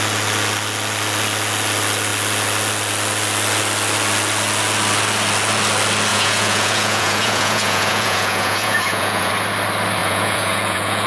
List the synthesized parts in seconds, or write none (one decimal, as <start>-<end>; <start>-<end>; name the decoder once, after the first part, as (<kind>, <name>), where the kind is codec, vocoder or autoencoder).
6.1-9.3 (vocoder, Vocos); 10.0-11.1